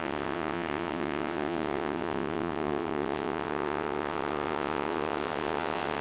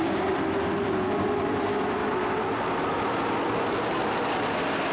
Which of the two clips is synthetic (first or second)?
first